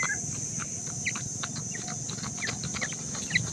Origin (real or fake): real